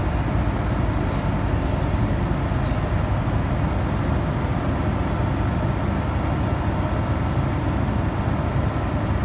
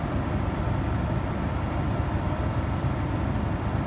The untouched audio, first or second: first